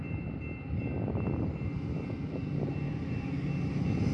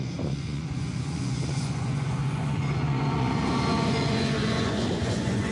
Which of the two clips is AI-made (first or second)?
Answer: second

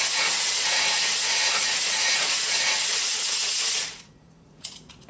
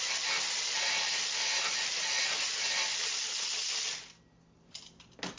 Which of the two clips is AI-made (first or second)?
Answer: first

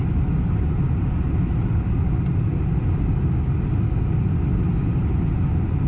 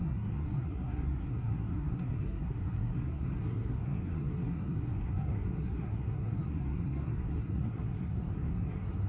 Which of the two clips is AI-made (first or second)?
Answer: second